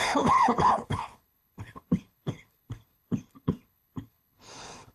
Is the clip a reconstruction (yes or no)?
yes